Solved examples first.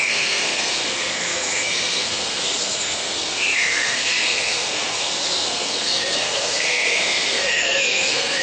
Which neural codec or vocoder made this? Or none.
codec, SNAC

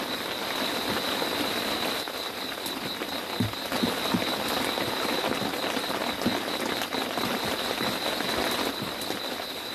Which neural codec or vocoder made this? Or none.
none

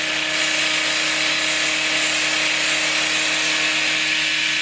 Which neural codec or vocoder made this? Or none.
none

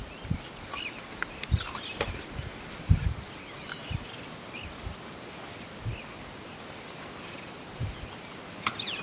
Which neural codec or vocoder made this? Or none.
none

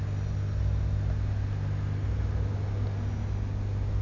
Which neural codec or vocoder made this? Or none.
none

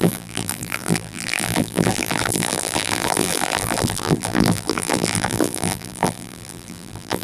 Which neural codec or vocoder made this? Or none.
vocoder, BigVGAN v2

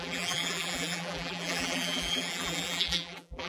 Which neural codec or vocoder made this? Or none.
vocoder, BigVGAN v2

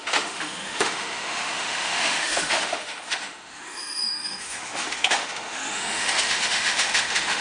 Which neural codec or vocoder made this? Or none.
autoencoder, DAC-VAE